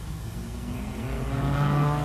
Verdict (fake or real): fake